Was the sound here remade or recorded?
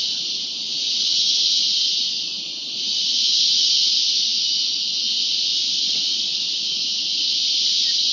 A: recorded